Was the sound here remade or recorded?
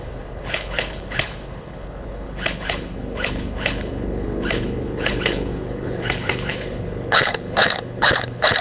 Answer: remade